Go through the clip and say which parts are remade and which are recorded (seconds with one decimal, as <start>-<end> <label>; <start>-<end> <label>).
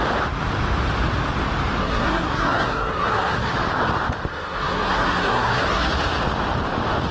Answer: 0.0-1.8 recorded; 1.8-3.5 remade; 3.5-4.3 recorded; 4.3-5.9 remade; 5.9-7.1 recorded